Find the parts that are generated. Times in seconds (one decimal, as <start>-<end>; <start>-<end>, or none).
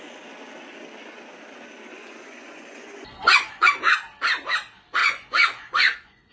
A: 1.9-3.7; 5.0-6.3